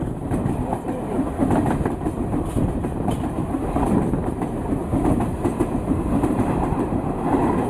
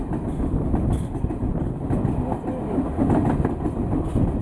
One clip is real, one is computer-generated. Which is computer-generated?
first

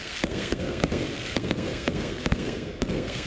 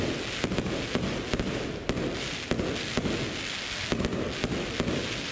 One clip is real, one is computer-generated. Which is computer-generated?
first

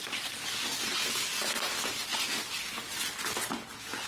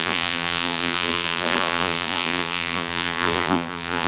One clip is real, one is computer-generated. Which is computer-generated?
second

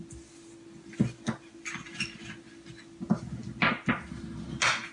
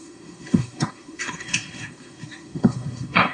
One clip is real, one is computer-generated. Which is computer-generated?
second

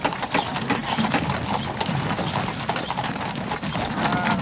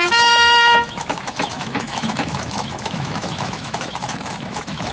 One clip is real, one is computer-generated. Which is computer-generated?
second